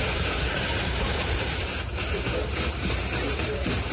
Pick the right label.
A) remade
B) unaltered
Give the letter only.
A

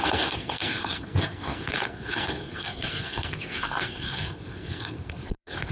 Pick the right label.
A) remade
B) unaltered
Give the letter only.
A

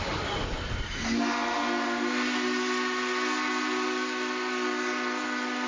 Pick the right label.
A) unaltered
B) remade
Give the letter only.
A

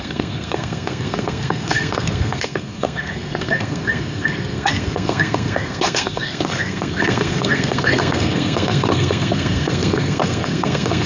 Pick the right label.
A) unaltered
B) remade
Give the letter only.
B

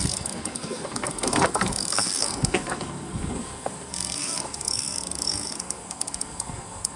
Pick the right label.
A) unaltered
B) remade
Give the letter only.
B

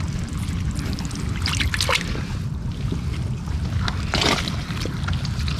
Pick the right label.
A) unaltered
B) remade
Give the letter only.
A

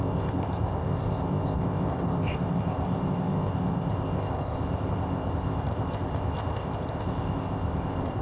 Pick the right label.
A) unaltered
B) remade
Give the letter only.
B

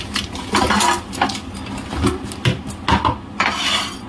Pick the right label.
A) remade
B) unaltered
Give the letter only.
B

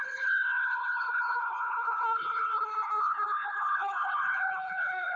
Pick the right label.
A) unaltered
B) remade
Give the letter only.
B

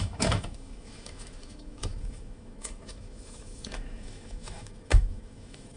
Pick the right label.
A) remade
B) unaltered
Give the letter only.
A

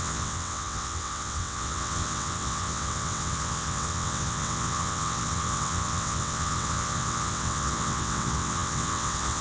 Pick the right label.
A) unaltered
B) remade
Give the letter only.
B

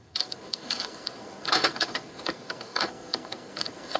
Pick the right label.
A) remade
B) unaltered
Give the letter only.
A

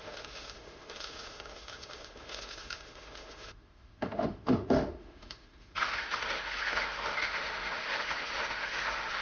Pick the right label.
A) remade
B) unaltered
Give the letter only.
A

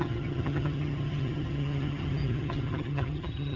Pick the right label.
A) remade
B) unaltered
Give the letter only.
A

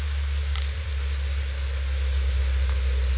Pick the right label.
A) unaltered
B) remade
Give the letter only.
A